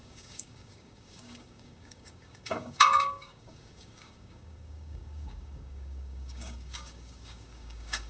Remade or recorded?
remade